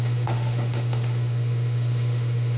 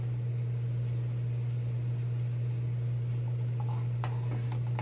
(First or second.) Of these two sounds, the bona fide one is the second